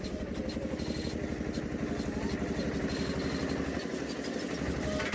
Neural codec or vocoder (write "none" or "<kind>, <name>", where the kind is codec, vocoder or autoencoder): none